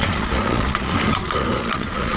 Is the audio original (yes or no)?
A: no